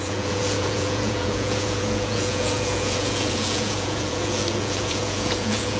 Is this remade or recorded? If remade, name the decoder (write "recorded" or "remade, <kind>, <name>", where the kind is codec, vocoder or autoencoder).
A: remade, vocoder, Vocos